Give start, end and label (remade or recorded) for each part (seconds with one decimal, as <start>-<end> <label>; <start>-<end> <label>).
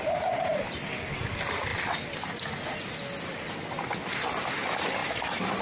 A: 0.0-5.6 recorded